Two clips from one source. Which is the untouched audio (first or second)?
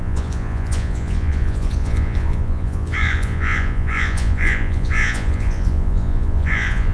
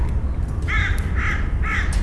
second